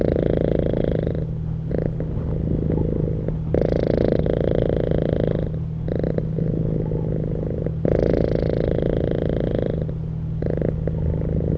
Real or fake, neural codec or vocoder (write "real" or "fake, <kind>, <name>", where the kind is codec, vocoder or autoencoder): real